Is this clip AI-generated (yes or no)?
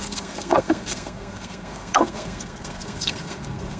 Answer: yes